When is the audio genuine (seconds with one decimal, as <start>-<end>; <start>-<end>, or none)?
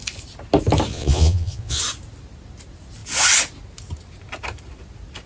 0.0-0.9; 1.8-5.3